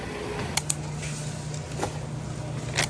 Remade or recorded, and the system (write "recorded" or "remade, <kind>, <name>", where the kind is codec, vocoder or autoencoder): recorded